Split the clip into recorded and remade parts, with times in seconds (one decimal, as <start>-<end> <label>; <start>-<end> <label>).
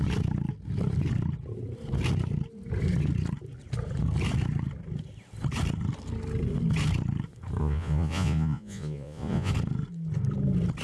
0.0-7.6 recorded; 7.6-9.5 remade; 9.5-10.8 recorded